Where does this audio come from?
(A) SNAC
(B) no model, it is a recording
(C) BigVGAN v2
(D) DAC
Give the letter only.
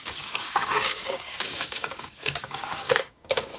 D